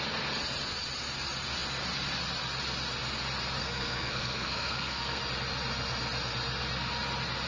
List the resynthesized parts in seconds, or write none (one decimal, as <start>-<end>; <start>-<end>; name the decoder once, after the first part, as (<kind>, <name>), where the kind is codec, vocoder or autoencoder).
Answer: 3.6-5.2 (codec, SNAC)